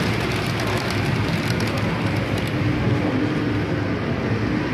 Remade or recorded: recorded